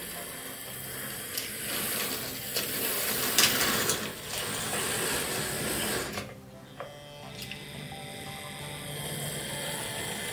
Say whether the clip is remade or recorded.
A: recorded